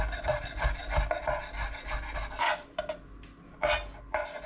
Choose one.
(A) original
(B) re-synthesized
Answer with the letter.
A